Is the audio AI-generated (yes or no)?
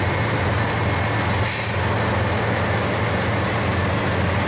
no